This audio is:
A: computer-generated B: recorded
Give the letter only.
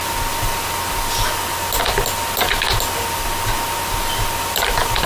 B